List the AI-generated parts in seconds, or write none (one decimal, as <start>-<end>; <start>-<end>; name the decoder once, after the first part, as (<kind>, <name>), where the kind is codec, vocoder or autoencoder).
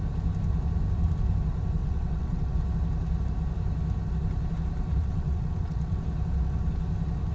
1.8-2.5 (vocoder, WaveNeXt); 5.0-6.0